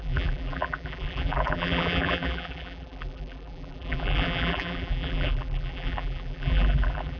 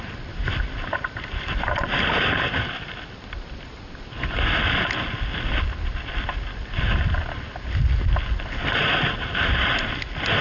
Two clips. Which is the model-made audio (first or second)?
first